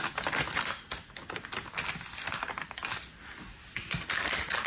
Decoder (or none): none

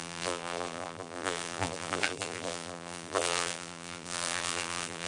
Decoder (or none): vocoder, BigVGAN v2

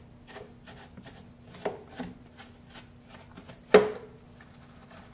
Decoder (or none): none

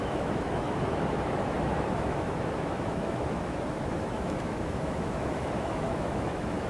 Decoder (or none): autoencoder, DAC-VAE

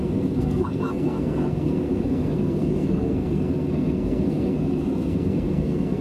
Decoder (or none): codec, SNAC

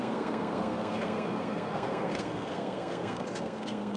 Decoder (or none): codec, SNAC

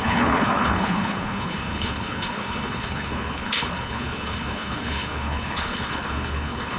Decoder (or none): codec, HILCodec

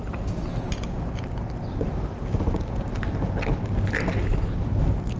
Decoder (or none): none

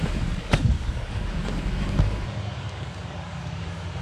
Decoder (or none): codec, DAC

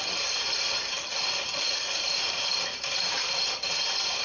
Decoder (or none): vocoder, BigVGAN v2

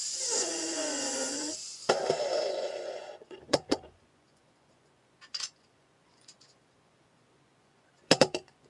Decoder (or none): vocoder, Vocos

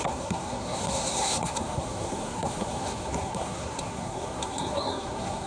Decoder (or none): codec, SNAC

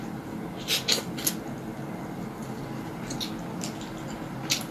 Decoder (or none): none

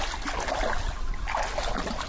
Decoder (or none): none